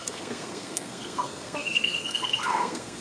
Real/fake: fake